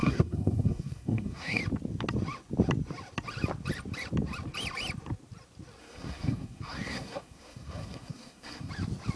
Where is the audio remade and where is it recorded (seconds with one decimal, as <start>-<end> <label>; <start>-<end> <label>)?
0.0-1.6 remade; 1.6-5.8 recorded; 5.8-8.7 remade; 8.7-9.2 recorded

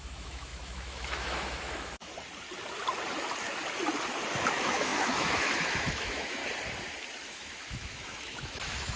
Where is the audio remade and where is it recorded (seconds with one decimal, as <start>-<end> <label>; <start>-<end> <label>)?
0.0-2.1 remade; 2.1-4.5 recorded; 4.5-6.4 remade; 6.4-7.3 recorded; 7.3-9.0 remade

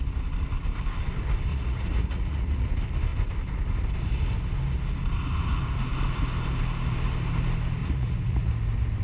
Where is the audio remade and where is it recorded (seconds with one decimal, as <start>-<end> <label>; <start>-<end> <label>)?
0.0-1.5 recorded; 1.5-2.6 remade; 2.6-7.8 recorded; 7.8-8.5 remade; 8.5-9.0 recorded

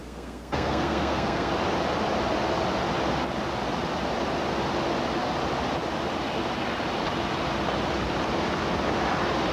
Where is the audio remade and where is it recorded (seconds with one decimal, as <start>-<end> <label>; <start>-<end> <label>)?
0.0-1.5 remade; 1.5-9.5 recorded